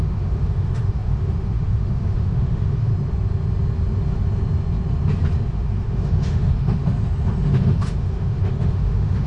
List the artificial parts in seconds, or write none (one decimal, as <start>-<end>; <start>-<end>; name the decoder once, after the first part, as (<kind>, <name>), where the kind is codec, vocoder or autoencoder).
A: 0.0-2.9 (autoencoder, DAC-VAE); 5.5-6.8; 7.6-9.3